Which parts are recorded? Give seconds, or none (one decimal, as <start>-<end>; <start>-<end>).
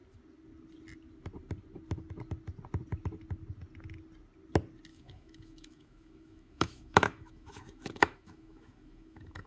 0.0-4.9